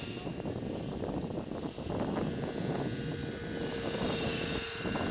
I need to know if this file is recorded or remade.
recorded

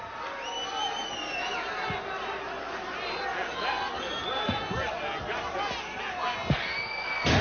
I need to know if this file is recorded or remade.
recorded